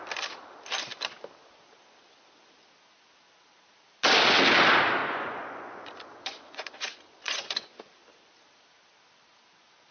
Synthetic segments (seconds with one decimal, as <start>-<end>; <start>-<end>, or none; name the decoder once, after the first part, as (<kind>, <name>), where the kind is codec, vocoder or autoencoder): 5.0-7.8 (vocoder, Vocos)

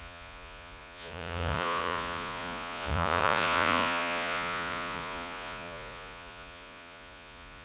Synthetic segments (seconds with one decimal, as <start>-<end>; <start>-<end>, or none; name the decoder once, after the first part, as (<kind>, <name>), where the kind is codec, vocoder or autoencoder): 0.0-7.6 (vocoder, Vocos)

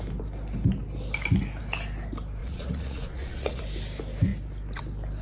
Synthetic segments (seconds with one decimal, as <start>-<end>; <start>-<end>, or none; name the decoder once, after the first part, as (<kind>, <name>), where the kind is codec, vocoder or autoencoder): 2.4-3.6 (vocoder, Vocos)

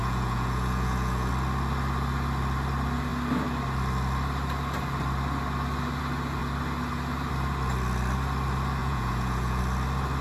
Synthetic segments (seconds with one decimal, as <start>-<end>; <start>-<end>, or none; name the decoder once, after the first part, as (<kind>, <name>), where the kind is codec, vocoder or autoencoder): 0.0-1.3 (vocoder, Vocos); 8.8-9.6

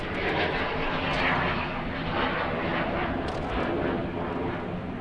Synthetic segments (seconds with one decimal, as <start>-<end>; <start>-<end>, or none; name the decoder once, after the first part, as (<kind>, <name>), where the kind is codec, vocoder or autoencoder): none